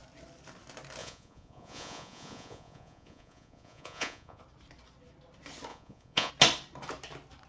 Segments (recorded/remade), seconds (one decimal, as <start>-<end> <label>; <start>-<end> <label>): 0.0-1.0 recorded; 1.0-4.4 remade; 4.4-5.7 recorded; 5.7-6.3 remade; 6.3-7.5 recorded